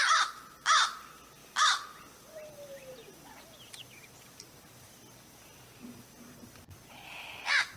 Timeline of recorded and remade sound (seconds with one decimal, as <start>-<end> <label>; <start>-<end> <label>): 0.0-1.4 recorded; 1.4-5.6 remade; 5.6-7.8 recorded